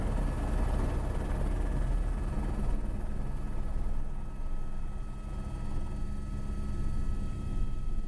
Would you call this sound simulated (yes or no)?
no